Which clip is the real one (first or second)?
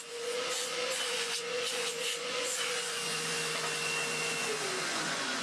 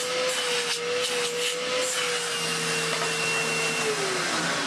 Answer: second